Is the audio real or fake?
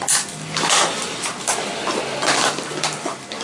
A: real